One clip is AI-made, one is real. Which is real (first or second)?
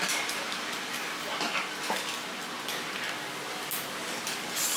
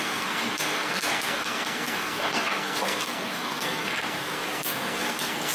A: first